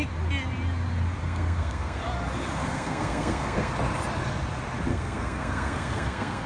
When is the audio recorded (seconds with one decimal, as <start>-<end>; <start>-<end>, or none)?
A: 0.0-1.2; 2.0-2.6; 3.7-4.9